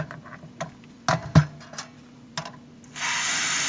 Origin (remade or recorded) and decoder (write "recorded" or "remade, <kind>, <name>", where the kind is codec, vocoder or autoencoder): recorded